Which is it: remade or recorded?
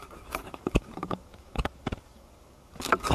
remade